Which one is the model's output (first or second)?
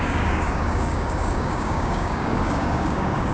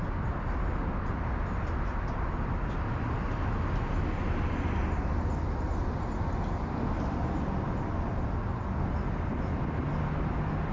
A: first